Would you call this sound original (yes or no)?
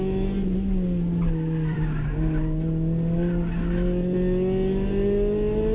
yes